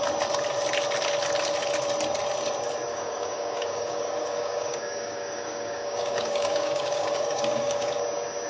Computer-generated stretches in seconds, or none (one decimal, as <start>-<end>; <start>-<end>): 2.9-8.0